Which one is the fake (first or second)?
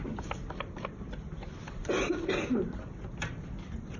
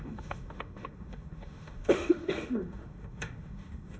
second